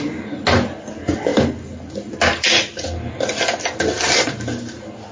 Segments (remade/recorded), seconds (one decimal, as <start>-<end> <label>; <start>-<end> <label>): 0.0-5.1 recorded